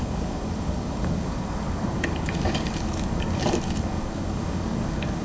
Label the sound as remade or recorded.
remade